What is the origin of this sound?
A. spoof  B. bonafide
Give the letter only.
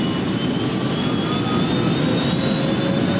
B